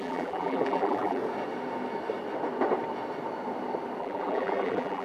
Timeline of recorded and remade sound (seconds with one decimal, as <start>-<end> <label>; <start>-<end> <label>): 0.0-1.2 remade; 1.2-4.0 recorded; 4.0-5.0 remade